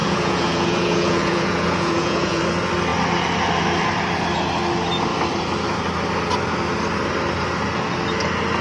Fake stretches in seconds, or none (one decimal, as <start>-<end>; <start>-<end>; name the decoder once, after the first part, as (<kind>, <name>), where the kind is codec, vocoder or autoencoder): 0.0-2.4 (vocoder, Vocos)

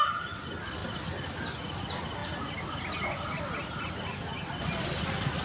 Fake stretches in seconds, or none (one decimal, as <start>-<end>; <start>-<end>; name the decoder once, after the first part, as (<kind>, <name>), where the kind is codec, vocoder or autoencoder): none